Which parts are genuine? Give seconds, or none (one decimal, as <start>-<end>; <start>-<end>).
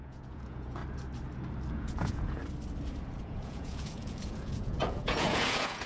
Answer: 0.8-1.7; 2.4-3.2